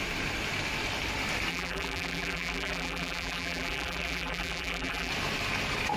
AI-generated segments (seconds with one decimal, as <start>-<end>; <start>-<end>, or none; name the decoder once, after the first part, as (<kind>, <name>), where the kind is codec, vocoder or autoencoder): 1.5-5.1 (vocoder, BigVGAN v2)